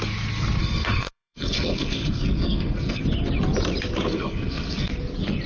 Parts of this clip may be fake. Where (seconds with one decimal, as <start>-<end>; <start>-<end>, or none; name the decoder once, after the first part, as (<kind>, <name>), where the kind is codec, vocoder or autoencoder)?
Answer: 0.6-3.0 (codec, SNAC); 4.1-4.9